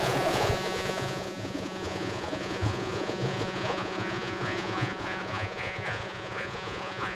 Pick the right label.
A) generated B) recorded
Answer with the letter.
A